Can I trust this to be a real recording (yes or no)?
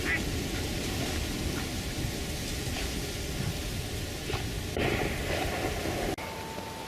yes